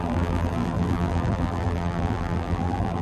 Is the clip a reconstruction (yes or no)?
yes